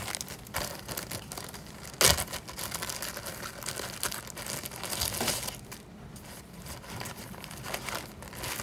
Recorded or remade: recorded